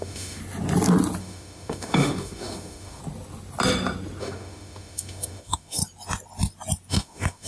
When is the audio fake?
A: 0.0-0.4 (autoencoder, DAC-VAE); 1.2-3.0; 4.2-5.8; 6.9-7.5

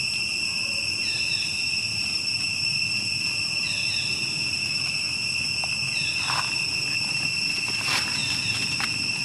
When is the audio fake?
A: 4.6-5.1 (autoencoder, DAC-VAE)

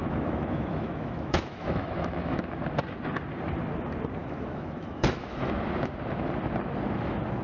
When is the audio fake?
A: 0.0-2.4 (autoencoder, DAC-VAE); 4.2-5.5